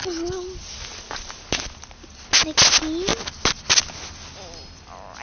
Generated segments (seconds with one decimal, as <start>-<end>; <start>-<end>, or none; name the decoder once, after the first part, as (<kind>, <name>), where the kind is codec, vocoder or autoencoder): none

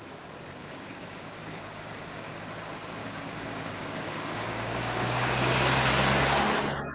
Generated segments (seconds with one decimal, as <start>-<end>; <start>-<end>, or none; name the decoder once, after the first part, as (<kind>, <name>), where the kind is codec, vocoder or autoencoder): 0.6-2.4 (codec, DAC); 3.0-5.9

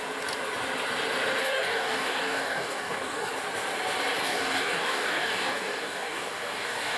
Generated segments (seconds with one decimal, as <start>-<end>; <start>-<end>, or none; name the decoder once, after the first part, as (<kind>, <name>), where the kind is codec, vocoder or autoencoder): 1.4-3.3 (codec, DAC); 4.2-7.0